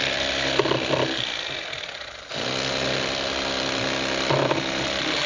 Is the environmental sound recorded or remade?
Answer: recorded